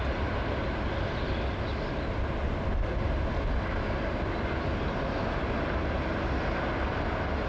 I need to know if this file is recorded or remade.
recorded